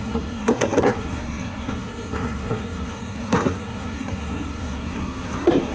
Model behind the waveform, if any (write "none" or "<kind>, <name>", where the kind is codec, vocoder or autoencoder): codec, SNAC